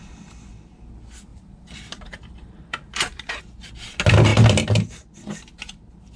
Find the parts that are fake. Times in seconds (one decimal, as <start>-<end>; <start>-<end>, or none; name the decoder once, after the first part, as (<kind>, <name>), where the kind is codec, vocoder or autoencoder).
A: 1.3-3.3 (vocoder, BigVGAN v2)